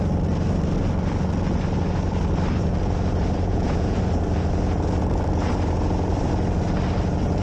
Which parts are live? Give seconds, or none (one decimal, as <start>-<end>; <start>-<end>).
0.0-3.5; 4.0-7.4